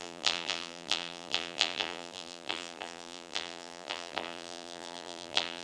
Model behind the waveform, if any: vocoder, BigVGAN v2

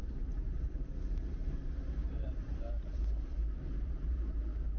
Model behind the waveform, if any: vocoder, BigVGAN v2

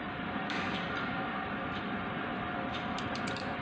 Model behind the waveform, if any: vocoder, BigVGAN v2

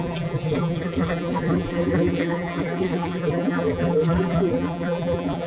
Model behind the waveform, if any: vocoder, BigVGAN v2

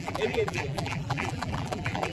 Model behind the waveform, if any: vocoder, BigVGAN v2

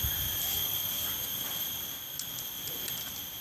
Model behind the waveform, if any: vocoder, BigVGAN v2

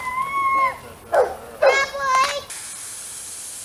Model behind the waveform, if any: none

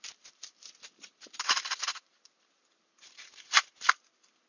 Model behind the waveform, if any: vocoder, BigVGAN v2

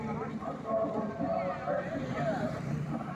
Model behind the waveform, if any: vocoder, BigVGAN v2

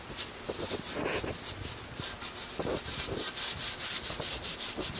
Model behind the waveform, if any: none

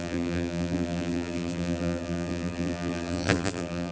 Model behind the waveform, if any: vocoder, BigVGAN v2